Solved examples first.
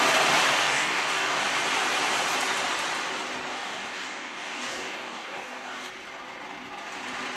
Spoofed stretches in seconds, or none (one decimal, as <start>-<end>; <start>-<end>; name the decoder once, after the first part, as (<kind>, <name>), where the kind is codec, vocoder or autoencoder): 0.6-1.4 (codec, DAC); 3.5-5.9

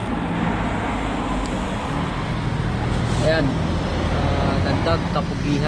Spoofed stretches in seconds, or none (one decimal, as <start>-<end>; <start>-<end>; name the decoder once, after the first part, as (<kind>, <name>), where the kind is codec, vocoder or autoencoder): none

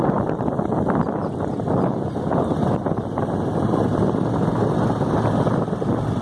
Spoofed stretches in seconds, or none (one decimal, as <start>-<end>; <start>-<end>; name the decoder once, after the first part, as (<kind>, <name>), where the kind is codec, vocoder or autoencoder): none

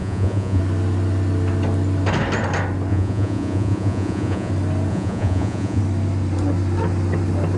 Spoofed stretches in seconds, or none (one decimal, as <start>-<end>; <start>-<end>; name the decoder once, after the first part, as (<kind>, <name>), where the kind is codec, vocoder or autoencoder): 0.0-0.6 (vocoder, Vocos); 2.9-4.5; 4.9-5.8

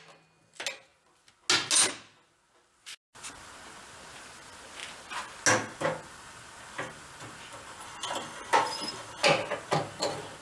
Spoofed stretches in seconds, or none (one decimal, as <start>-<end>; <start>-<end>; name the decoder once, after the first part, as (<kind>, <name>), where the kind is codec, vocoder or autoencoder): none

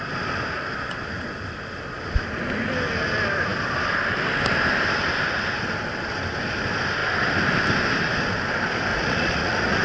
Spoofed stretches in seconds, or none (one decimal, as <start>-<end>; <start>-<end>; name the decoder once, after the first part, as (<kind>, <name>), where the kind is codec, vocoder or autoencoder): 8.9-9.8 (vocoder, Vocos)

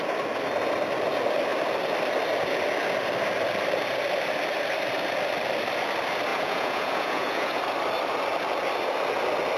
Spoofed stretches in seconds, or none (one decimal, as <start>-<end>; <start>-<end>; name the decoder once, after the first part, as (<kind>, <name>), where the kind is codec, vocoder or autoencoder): 6.3-7.6 (vocoder, Vocos)